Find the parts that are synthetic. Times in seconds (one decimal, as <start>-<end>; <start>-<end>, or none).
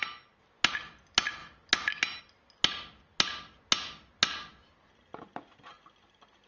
none